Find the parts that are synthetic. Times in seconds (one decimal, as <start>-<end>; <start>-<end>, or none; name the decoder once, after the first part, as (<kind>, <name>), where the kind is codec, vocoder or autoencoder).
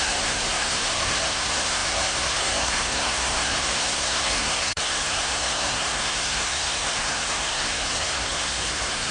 0.0-9.1 (codec, SNAC)